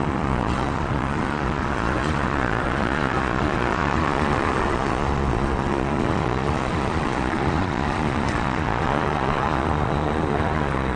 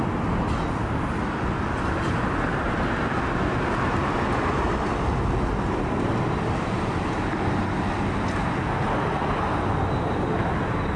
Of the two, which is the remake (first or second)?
first